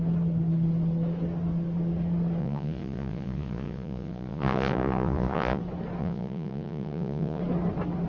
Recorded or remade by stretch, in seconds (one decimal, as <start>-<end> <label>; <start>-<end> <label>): 0.0-2.4 recorded; 2.4-5.6 remade; 5.6-6.0 recorded; 6.0-7.4 remade; 7.4-8.1 recorded